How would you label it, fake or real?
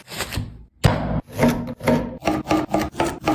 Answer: real